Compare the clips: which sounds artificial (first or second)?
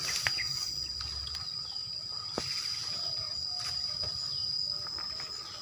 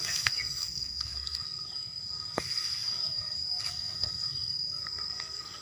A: second